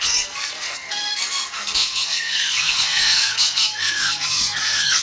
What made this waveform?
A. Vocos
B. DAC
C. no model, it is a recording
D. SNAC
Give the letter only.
D